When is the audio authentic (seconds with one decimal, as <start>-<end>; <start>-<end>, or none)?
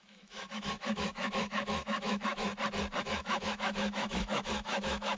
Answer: 2.5-3.0